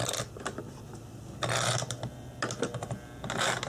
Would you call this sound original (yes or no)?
yes